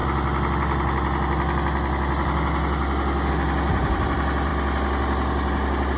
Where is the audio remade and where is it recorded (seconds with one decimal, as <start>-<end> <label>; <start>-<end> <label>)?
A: 0.0-6.0 recorded